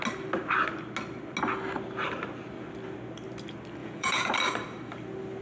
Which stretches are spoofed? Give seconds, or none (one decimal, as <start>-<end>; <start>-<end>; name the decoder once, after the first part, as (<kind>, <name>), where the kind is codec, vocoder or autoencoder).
3.8-4.3 (vocoder, Vocos)